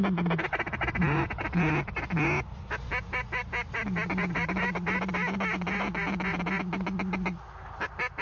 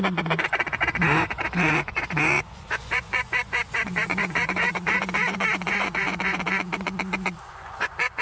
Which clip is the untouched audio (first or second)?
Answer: first